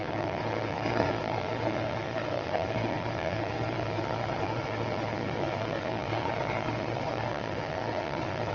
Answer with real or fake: fake